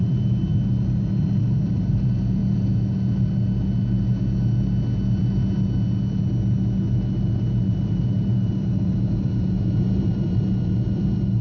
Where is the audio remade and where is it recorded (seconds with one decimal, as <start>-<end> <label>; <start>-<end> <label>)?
0.0-0.5 remade; 0.5-1.4 recorded; 1.4-2.4 remade; 2.4-7.7 recorded; 7.7-11.4 remade